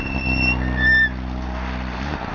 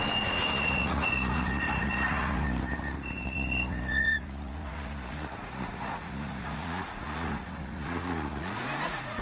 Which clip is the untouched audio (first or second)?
first